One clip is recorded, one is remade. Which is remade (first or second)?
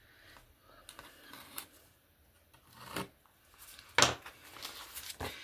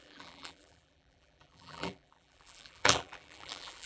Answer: second